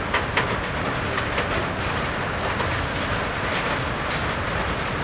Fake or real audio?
real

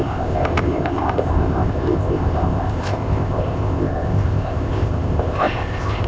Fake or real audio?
fake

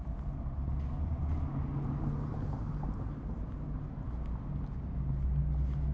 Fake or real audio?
real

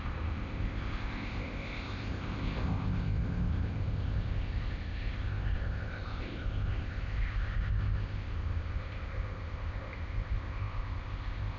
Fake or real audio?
fake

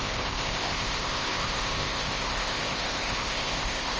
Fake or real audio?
fake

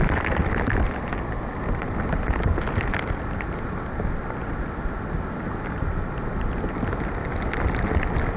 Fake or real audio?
real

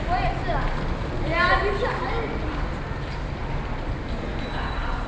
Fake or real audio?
real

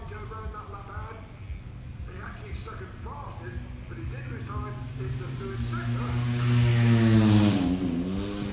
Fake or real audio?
real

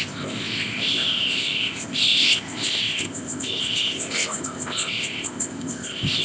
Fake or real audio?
fake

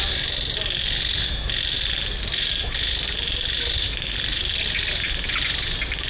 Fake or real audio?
real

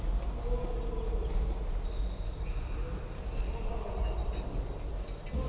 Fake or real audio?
real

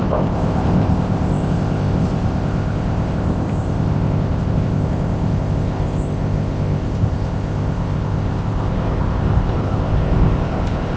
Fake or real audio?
fake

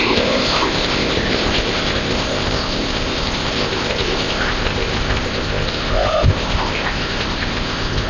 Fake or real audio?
fake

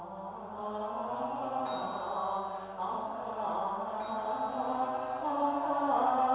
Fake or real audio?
real